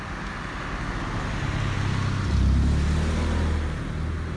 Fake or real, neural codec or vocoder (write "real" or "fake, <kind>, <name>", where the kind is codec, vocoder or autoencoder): real